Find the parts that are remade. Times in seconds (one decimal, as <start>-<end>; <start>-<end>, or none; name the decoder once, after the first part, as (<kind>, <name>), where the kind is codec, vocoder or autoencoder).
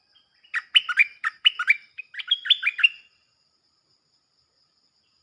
1.0-2.0 (vocoder, BigVGAN v2)